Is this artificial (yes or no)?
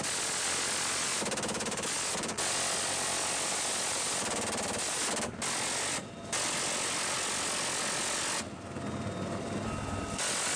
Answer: no